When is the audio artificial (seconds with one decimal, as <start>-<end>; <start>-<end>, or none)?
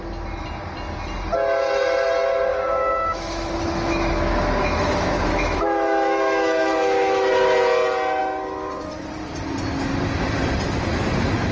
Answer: 2.5-7.3